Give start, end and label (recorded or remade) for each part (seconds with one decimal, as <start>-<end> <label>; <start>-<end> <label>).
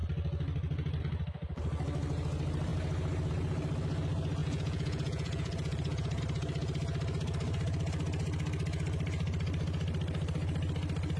0.0-4.4 recorded; 4.4-6.2 remade; 6.2-11.2 recorded